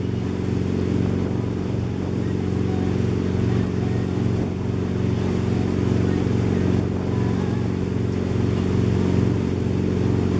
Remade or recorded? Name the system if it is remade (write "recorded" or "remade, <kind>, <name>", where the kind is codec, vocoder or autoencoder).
recorded